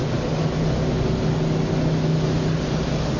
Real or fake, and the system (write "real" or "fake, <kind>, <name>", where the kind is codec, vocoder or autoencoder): real